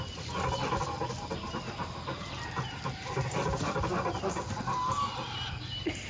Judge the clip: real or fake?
real